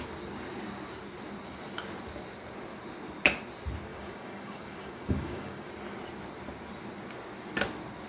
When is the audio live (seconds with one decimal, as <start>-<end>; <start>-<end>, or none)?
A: 0.0-3.9; 5.7-8.1